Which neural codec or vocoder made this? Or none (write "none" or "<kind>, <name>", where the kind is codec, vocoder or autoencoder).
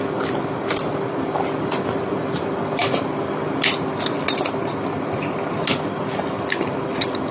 none